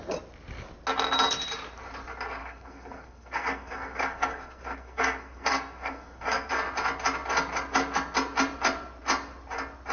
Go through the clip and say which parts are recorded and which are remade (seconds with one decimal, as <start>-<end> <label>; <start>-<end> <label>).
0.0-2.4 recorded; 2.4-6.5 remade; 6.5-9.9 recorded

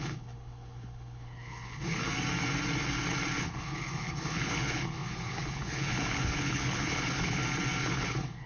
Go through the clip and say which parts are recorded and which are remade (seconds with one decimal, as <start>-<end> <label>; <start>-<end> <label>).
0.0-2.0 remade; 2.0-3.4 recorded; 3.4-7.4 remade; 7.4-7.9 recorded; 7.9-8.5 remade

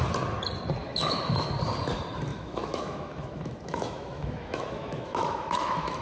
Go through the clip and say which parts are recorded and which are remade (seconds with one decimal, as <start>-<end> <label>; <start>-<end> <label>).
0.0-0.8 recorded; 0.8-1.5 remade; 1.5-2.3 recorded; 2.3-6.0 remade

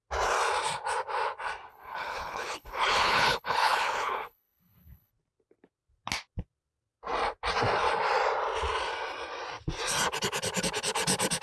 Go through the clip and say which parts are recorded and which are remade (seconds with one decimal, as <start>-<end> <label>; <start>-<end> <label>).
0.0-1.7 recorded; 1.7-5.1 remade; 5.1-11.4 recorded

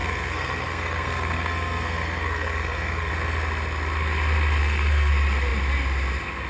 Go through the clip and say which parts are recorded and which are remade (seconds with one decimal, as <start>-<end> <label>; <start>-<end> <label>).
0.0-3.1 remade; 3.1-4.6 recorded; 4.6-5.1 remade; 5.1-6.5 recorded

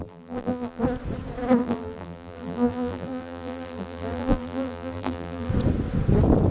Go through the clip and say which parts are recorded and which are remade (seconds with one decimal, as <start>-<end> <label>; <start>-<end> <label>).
0.0-0.8 remade; 0.8-1.6 recorded; 1.6-5.5 remade; 5.5-6.5 recorded

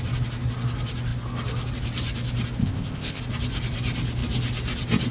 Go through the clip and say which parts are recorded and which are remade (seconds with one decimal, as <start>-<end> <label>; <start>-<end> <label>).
0.0-2.6 recorded; 2.6-3.2 remade; 3.2-5.1 recorded

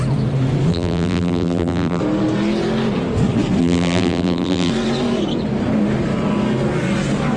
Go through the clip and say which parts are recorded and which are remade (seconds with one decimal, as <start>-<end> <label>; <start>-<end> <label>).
0.0-0.7 recorded; 0.7-2.0 remade; 2.0-3.6 recorded; 3.6-4.7 remade; 4.7-7.4 recorded